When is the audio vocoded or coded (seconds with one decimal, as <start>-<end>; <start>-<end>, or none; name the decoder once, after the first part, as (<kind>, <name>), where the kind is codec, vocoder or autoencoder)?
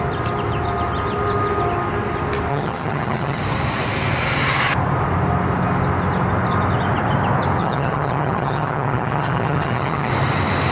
2.5-3.4 (vocoder, HiFi-GAN); 7.6-10.1